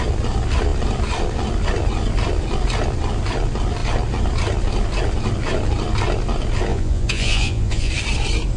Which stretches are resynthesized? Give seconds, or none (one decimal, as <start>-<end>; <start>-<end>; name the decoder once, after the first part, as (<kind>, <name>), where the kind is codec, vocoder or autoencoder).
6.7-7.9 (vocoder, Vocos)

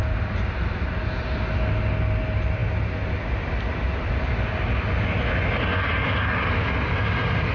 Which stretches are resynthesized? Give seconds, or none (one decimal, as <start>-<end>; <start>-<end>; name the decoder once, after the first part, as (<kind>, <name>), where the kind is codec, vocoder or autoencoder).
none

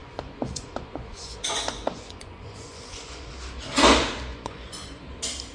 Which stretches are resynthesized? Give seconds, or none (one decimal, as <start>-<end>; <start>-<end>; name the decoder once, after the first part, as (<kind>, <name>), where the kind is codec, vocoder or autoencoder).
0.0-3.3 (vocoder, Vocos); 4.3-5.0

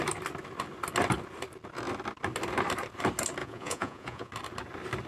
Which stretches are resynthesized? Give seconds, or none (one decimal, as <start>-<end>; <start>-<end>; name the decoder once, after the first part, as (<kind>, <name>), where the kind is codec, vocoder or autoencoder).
3.4-4.3 (vocoder, Vocos)

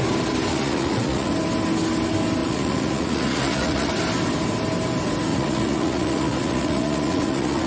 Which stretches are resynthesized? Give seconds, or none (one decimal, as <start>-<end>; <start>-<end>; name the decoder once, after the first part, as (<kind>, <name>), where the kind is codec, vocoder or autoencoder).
0.5-1.3 (vocoder, Vocos); 2.4-3.9; 5.3-7.7

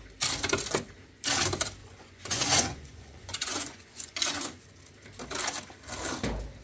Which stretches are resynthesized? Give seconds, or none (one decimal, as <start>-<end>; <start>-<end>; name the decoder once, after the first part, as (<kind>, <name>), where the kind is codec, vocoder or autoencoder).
1.8-4.8 (vocoder, Vocos)

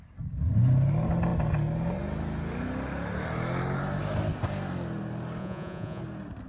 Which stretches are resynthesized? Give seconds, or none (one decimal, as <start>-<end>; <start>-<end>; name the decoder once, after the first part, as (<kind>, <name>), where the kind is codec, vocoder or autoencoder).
5.4-6.0 (vocoder, Vocos)